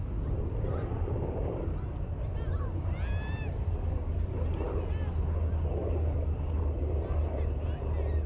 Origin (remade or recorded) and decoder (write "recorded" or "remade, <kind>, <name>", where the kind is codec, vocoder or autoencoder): recorded